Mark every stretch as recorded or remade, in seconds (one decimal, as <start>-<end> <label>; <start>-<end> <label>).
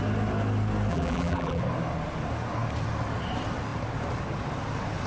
0.0-0.9 recorded; 0.9-1.6 remade; 1.6-5.1 recorded